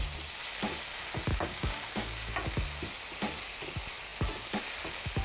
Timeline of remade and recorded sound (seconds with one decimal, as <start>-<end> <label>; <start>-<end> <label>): 0.0-1.3 recorded; 1.3-2.3 remade; 2.3-5.2 recorded